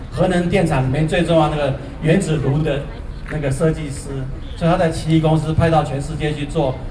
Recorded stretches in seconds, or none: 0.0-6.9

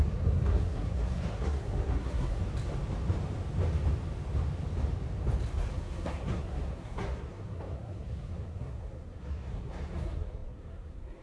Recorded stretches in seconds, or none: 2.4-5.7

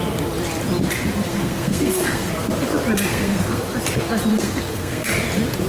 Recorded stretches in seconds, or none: 0.0-1.3; 2.3-3.1; 3.6-4.3; 5.1-5.7

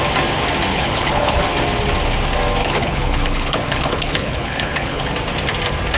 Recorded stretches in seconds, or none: 0.0-0.7; 1.4-2.6; 5.1-6.0